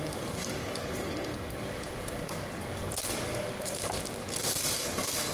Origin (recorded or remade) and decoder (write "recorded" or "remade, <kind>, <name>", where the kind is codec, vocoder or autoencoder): remade, codec, DAC